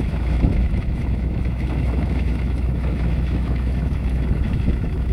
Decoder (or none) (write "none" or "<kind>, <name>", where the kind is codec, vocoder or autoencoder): autoencoder, DAC-VAE